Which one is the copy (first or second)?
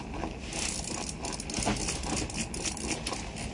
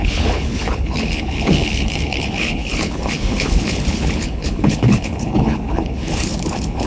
second